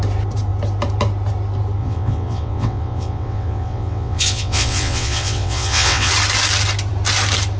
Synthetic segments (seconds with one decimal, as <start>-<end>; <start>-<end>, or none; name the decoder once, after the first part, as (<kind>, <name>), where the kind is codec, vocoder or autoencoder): 1.8-6.1 (vocoder, WaveNeXt)